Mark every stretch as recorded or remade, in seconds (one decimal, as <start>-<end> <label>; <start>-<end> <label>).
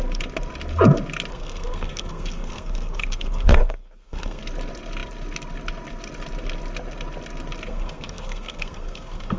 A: 0.0-1.3 recorded; 1.3-4.4 remade; 4.4-7.7 recorded; 7.7-9.4 remade